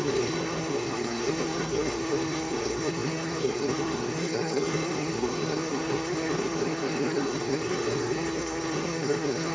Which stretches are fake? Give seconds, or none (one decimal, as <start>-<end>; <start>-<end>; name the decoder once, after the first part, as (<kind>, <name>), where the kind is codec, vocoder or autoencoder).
0.0-9.5 (codec, SNAC)